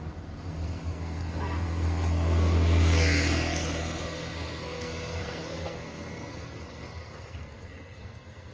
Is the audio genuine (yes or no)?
no